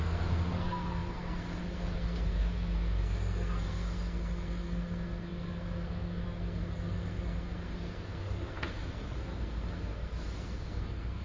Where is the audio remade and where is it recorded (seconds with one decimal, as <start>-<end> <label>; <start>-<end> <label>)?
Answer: 0.0-11.2 remade